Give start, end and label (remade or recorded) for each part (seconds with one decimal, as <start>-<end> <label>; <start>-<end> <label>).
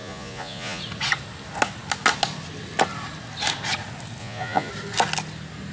0.0-0.8 remade; 0.8-4.2 recorded; 4.2-4.7 remade; 4.7-5.7 recorded